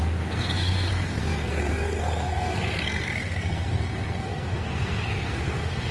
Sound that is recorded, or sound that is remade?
remade